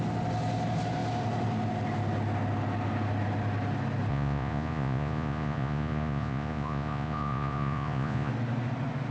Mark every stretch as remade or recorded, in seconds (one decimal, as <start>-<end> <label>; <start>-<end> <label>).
0.0-4.1 recorded; 4.1-8.3 remade; 8.3-9.1 recorded